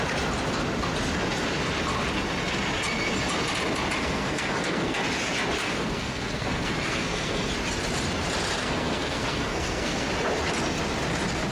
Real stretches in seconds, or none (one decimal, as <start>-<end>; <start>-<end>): 0.0-4.0; 5.0-5.6; 7.5-8.6; 10.1-11.5